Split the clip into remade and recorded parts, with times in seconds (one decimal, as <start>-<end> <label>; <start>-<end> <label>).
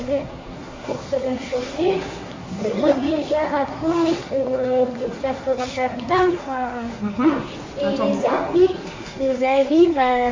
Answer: 0.0-7.5 remade; 7.5-8.2 recorded; 8.2-10.3 remade